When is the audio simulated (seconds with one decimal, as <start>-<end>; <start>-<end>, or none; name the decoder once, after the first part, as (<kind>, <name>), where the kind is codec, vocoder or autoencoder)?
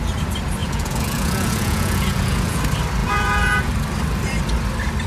0.6-2.6 (vocoder, Vocos); 3.0-3.7